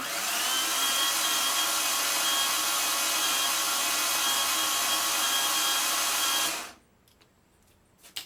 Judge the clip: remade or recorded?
recorded